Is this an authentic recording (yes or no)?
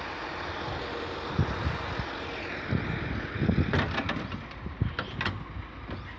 yes